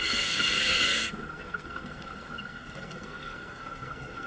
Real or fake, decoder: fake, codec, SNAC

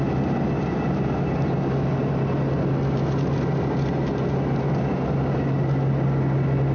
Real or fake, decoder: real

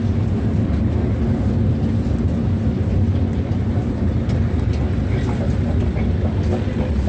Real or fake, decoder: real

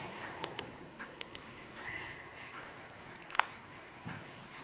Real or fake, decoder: fake, codec, SNAC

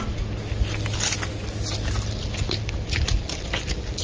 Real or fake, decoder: real